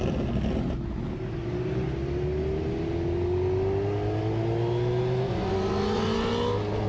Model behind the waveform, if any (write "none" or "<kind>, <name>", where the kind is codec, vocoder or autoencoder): none